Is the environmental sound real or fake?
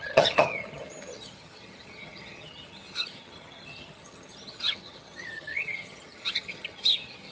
fake